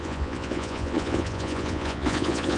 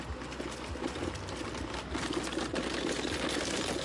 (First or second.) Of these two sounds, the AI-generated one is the first